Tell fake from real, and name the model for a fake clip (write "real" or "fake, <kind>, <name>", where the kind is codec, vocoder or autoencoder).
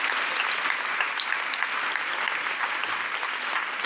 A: real